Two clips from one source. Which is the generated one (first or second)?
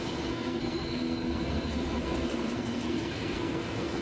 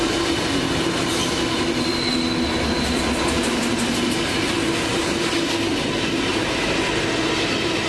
first